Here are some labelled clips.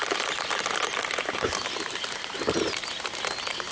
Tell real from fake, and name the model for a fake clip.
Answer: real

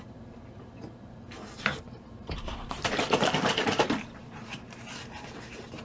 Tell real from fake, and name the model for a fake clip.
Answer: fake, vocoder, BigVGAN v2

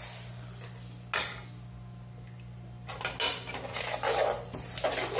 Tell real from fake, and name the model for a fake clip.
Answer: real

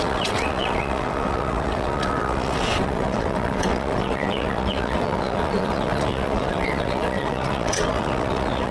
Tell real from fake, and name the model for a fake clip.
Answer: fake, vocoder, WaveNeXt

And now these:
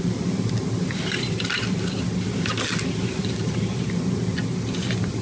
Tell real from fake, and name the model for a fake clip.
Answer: real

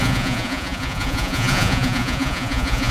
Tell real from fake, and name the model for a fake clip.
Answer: fake, vocoder, Vocos